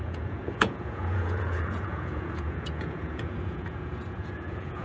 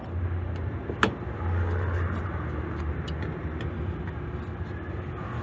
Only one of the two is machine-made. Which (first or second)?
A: first